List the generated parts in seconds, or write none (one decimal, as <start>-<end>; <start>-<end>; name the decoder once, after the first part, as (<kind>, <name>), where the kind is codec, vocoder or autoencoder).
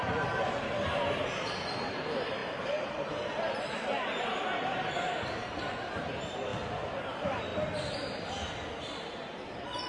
0.0-6.5 (vocoder, BigVGAN v2); 7.0-7.5; 9.3-9.9